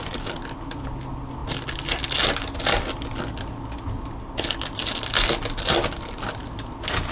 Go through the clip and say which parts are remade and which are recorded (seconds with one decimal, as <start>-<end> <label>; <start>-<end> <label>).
0.0-7.1 recorded

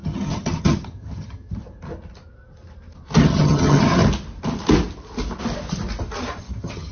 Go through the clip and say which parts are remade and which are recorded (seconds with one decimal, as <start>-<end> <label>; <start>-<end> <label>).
0.0-1.6 remade; 1.6-3.2 recorded; 3.2-4.0 remade; 4.0-6.4 recorded; 6.4-6.9 remade

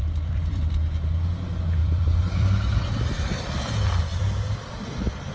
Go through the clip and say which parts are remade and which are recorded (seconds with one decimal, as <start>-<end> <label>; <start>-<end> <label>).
0.0-0.6 remade; 0.6-1.8 recorded; 1.8-3.6 remade; 3.6-4.1 recorded; 4.1-4.7 remade; 4.7-5.3 recorded